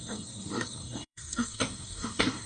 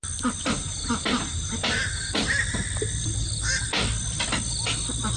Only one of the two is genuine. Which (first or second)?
second